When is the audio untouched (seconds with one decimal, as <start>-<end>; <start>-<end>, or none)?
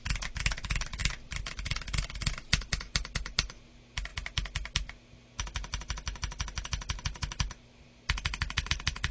0.0-9.1